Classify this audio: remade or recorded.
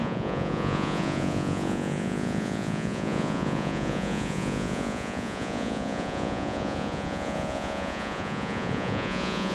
remade